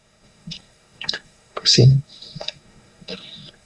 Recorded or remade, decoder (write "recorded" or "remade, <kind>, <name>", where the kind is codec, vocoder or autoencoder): remade, codec, SNAC